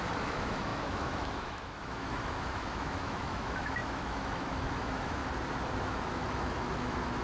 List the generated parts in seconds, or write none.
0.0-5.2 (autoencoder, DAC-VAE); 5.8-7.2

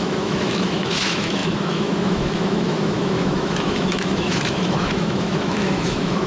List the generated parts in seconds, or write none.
0.0-6.3 (autoencoder, DAC-VAE)

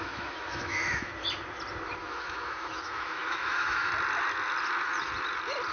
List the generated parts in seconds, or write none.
0.0-1.1 (autoencoder, DAC-VAE); 2.0-3.9

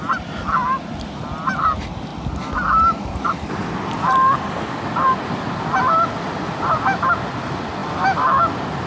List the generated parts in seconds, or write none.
none

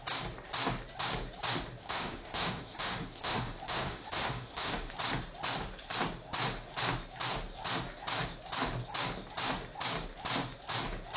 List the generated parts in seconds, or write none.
1.8-4.9 (autoencoder, DAC-VAE)

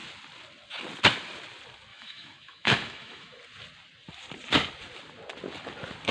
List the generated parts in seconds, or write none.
1.9-3.4 (autoencoder, DAC-VAE)